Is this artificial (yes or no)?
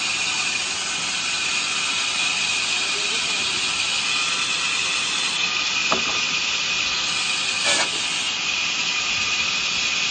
no